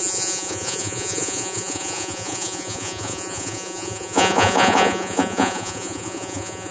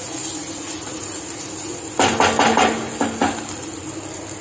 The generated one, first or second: first